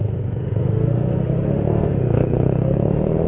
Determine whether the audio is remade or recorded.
remade